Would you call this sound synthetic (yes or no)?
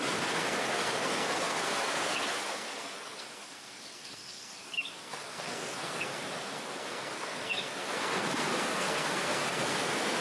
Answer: yes